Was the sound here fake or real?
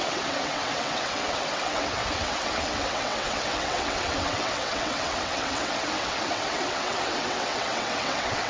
fake